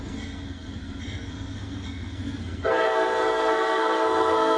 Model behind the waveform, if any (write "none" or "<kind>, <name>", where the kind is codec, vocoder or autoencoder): codec, SNAC